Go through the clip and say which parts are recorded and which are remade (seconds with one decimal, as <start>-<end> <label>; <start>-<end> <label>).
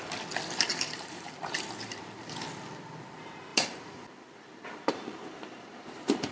0.0-0.7 recorded; 0.7-2.2 remade; 2.2-3.5 recorded; 3.5-5.7 remade; 5.7-6.3 recorded